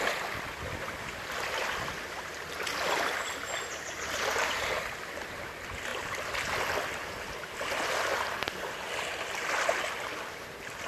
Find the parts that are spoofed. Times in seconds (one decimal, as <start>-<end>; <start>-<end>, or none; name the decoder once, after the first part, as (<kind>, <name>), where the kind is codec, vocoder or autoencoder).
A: 8.1-9.2 (vocoder, BigVGAN v2)